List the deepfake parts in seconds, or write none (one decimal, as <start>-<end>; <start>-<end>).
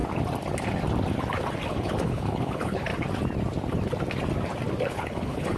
1.7-2.9; 4.9-5.6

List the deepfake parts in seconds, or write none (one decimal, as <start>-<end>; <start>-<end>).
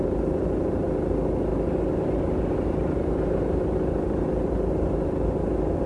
none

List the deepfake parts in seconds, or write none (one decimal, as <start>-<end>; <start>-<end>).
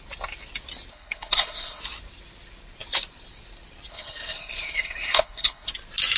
0.9-1.8; 3.9-5.7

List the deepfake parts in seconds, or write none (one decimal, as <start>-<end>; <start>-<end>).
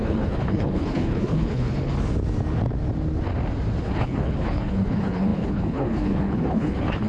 0.0-1.9; 3.8-7.1